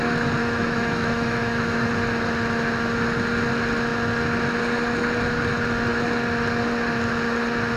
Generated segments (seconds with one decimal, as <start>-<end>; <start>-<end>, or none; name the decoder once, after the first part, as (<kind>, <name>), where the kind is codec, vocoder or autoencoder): 0.4-1.9 (autoencoder, DAC-VAE)